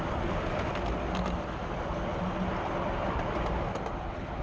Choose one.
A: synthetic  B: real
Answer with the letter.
B